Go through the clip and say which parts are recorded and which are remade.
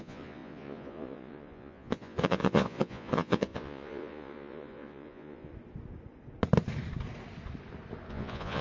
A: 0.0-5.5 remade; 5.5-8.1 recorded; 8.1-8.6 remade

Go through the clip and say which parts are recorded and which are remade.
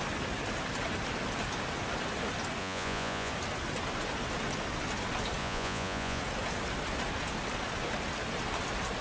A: 0.0-2.6 recorded; 2.6-3.3 remade; 3.3-5.4 recorded; 5.4-6.2 remade; 6.2-9.0 recorded